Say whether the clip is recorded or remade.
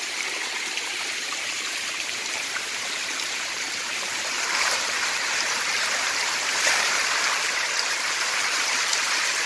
remade